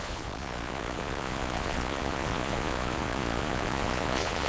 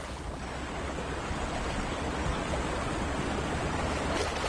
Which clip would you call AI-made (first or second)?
first